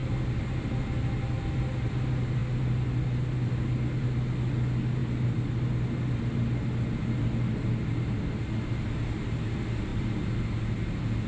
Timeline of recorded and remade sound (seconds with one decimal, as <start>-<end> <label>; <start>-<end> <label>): 0.0-11.3 recorded